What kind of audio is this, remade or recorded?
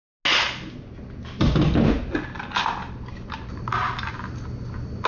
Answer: recorded